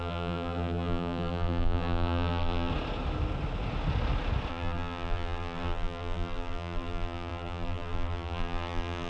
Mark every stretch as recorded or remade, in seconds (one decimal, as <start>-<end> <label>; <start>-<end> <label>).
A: 0.0-2.7 remade; 2.7-4.5 recorded; 4.5-9.1 remade

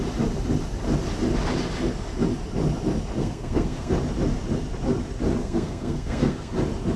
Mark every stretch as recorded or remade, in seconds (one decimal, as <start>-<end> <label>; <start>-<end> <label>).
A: 0.0-3.2 recorded; 3.2-3.9 remade; 3.9-5.4 recorded; 5.4-6.5 remade; 6.5-7.0 recorded

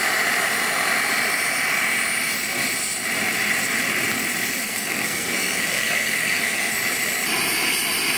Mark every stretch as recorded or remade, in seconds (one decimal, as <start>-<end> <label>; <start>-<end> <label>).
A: 0.0-4.6 recorded; 4.6-6.7 remade; 6.7-8.2 recorded

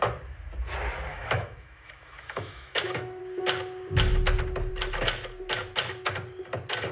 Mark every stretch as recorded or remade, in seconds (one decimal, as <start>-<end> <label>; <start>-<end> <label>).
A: 0.0-1.1 recorded; 1.1-3.2 remade; 3.2-6.9 recorded

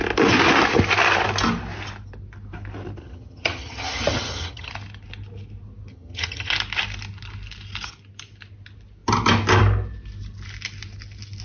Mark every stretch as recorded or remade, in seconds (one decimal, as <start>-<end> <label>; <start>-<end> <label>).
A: 0.0-3.0 recorded; 3.0-4.7 remade; 4.7-5.9 recorded; 5.9-6.5 remade; 6.5-11.4 recorded